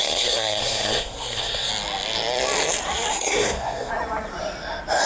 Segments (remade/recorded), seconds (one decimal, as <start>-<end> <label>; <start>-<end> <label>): 0.0-1.7 remade; 1.7-3.1 recorded; 3.1-3.9 remade; 3.9-5.1 recorded